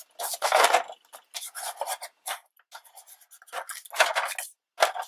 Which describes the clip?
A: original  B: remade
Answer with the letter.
A